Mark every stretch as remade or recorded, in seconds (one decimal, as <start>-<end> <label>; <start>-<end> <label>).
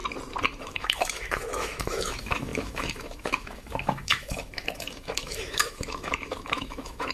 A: 0.0-0.6 recorded; 0.6-7.1 remade